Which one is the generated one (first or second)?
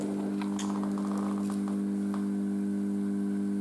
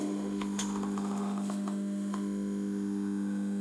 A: second